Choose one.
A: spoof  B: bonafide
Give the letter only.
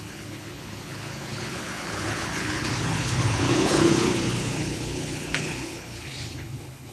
A